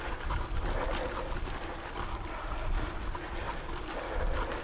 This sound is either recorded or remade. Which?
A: recorded